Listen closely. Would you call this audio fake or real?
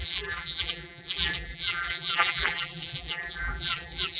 fake